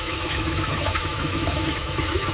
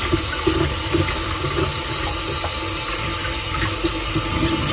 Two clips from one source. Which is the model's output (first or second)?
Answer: first